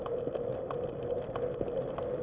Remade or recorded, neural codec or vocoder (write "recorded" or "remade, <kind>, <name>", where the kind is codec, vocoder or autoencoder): recorded